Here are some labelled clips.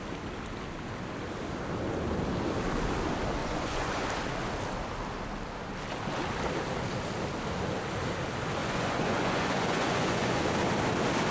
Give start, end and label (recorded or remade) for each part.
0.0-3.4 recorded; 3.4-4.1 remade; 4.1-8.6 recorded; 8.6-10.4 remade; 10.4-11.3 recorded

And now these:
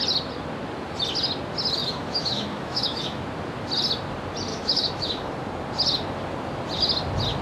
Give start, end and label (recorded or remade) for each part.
0.0-1.8 recorded; 1.8-3.2 remade; 3.2-4.5 recorded; 4.5-5.3 remade; 5.3-7.4 recorded

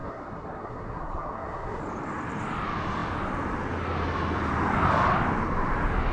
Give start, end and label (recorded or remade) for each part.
0.0-1.8 remade; 1.8-6.1 recorded

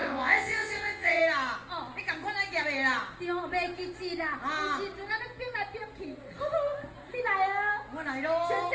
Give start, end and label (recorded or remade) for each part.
0.0-1.2 remade; 1.2-8.7 recorded

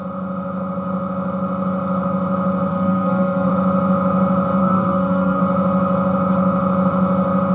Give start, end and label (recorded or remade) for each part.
0.0-2.7 recorded; 2.7-3.5 remade; 3.5-4.6 recorded; 4.6-5.4 remade; 5.4-7.5 recorded

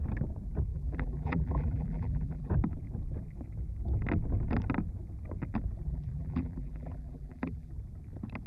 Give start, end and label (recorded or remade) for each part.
0.0-0.7 recorded; 0.7-2.5 remade; 2.5-5.9 recorded; 5.9-7.7 remade; 7.7-8.5 recorded